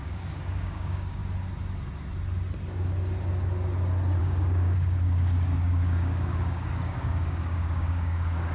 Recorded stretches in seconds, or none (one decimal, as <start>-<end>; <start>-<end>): 1.2-4.2